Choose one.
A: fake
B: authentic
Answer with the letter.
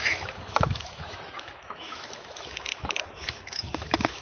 A